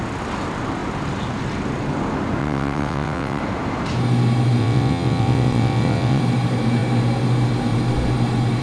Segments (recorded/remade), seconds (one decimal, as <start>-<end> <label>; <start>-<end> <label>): 0.0-2.4 recorded; 2.4-3.4 remade; 3.4-4.6 recorded; 4.6-6.2 remade; 6.2-8.6 recorded